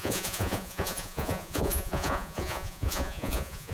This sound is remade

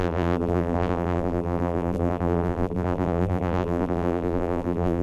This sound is remade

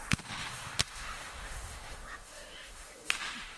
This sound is remade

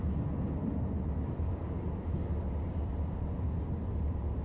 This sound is recorded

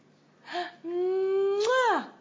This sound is recorded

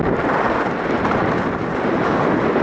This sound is recorded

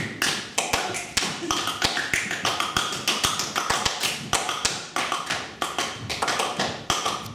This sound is recorded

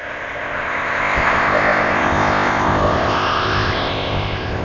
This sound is remade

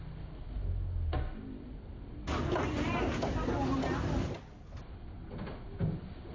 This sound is recorded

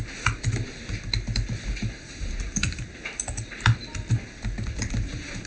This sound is recorded